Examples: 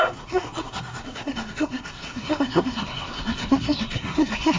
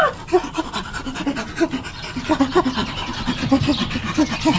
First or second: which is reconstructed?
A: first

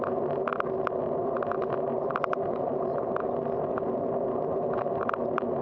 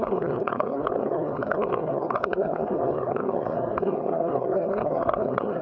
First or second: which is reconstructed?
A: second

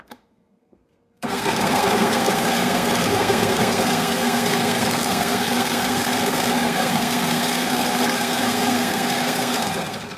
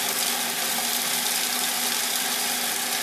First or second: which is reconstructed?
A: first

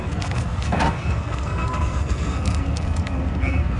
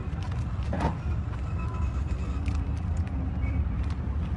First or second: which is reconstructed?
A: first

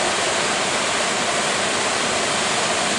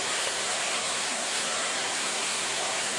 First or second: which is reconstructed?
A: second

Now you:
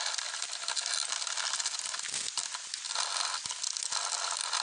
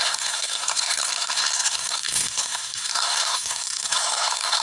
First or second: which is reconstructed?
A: second